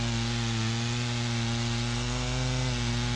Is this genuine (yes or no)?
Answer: yes